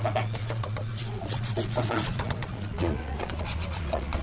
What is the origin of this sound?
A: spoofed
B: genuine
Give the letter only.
A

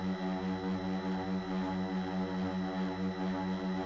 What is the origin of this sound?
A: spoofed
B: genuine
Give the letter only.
B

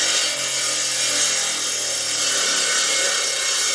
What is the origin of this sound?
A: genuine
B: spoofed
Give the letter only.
A